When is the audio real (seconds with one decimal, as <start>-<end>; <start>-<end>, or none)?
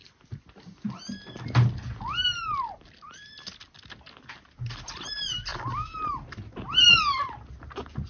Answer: 0.0-8.1